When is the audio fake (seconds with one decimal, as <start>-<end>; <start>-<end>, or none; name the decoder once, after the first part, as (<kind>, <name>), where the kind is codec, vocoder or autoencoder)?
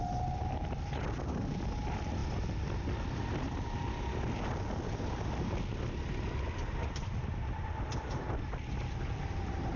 none